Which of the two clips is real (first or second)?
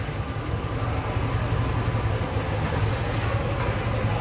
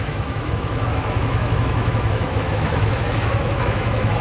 first